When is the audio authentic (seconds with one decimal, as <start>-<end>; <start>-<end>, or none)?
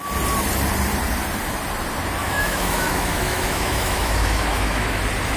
0.0-2.2; 5.0-5.4